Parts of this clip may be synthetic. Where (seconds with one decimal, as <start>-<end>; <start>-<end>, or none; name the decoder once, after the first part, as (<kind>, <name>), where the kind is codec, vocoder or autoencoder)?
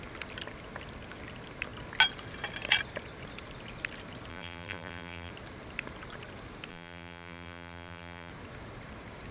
4.3-5.3 (vocoder, BigVGAN v2); 6.7-8.3